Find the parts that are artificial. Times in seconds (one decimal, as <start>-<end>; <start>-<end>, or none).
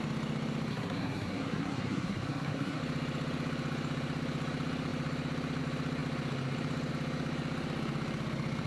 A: 0.7-2.8